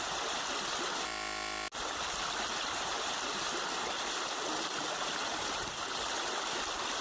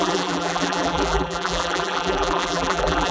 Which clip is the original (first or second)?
first